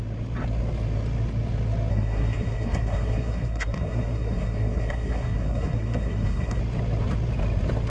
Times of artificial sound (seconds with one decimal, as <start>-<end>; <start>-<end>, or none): 1.9-6.6